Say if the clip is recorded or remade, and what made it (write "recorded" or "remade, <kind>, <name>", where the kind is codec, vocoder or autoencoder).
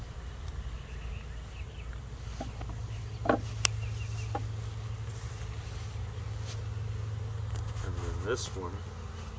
recorded